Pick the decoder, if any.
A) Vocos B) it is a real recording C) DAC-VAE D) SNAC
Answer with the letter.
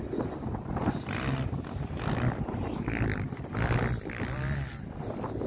B